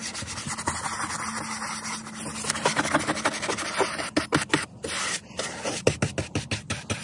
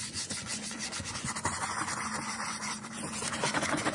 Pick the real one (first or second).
first